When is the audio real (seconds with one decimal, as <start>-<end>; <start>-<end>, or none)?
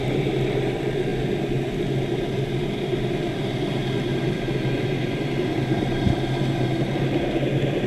0.0-7.9